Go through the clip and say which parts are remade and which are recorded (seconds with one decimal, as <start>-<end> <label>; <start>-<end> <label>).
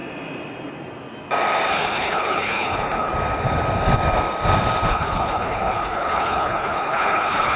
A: 0.0-1.7 recorded; 1.7-3.1 remade; 3.1-4.9 recorded; 4.9-7.6 remade